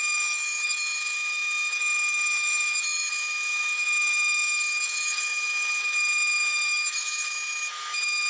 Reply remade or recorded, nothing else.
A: remade